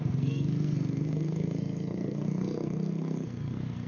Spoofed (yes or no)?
yes